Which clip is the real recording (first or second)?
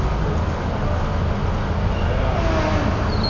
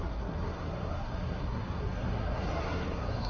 first